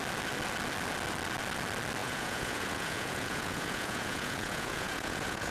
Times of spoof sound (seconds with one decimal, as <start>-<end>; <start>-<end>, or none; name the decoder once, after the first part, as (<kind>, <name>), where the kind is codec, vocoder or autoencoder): 2.0-5.5 (vocoder, Vocos)